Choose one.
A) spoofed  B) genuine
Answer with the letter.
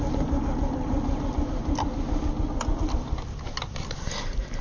B